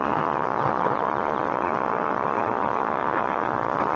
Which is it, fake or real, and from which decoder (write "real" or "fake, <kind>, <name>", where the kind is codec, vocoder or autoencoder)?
fake, vocoder, Vocos